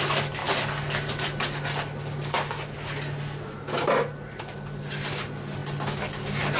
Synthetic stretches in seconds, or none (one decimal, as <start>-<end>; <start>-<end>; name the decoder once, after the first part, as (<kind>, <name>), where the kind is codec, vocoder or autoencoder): none